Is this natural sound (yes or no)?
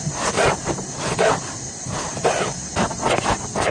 yes